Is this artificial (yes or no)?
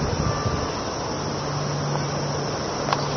no